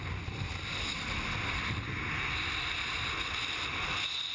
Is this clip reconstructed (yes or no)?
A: no